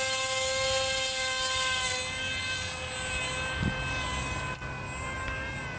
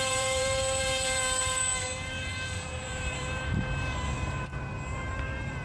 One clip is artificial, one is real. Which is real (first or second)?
first